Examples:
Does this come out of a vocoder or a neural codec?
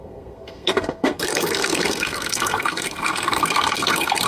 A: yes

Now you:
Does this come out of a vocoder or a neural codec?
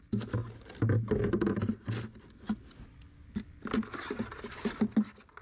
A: no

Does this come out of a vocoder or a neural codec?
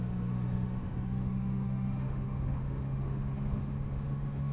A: yes